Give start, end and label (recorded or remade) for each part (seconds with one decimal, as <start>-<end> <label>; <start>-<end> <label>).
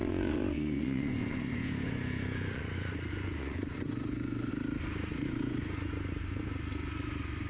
0.0-4.5 remade; 4.5-5.1 recorded; 5.1-6.4 remade; 6.4-7.5 recorded